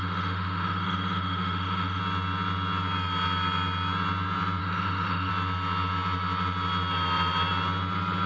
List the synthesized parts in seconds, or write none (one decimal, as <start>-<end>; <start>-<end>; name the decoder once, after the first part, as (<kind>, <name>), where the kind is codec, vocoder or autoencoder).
0.0-2.0 (autoencoder, DAC-VAE); 4.6-5.3